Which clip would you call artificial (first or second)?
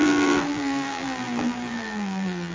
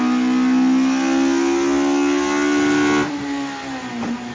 first